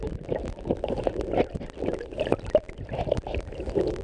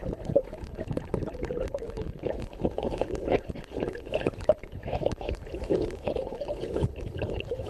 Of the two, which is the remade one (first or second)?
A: second